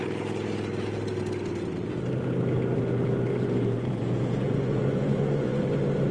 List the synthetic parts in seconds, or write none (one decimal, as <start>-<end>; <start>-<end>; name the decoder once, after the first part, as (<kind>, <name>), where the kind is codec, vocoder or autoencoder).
3.3-5.6 (vocoder, Vocos)